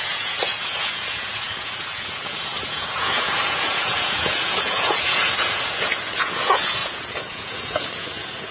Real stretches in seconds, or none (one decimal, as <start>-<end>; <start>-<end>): none